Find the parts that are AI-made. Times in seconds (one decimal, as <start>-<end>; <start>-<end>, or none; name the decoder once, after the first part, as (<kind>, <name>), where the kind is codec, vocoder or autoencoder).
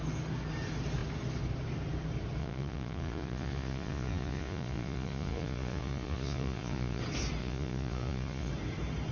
2.4-7.0 (vocoder, Vocos); 7.4-8.5